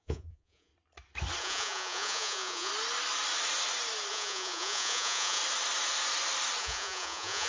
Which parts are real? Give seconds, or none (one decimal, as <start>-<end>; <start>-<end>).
0.7-1.4; 2.7-4.1; 5.4-6.6